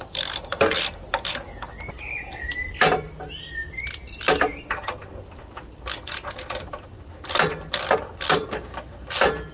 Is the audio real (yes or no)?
yes